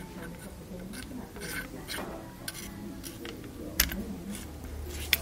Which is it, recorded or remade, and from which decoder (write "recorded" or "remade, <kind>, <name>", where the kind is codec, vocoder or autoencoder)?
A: recorded